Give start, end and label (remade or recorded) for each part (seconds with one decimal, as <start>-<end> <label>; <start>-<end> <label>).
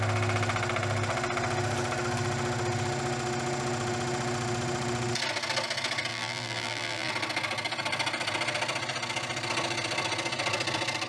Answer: 0.0-6.1 recorded; 6.1-7.1 remade; 7.1-11.1 recorded